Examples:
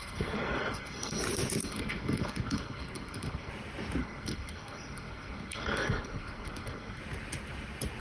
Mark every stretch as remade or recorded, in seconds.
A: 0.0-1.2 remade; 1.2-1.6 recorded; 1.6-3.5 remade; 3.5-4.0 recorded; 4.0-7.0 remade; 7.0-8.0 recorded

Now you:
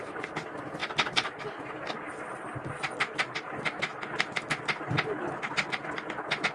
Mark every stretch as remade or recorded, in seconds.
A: 0.0-6.5 recorded

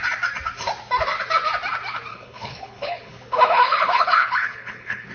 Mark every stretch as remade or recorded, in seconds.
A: 0.0-2.1 recorded; 2.1-5.1 remade

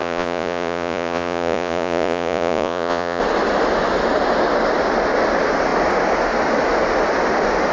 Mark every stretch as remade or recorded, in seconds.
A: 0.0-3.2 remade; 3.2-7.7 recorded

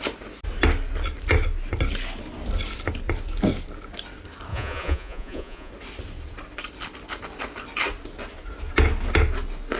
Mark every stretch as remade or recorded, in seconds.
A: 0.0-4.5 recorded; 4.5-5.7 remade; 5.7-9.8 recorded

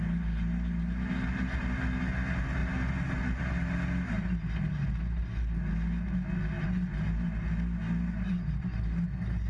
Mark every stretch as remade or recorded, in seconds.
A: 0.0-9.5 recorded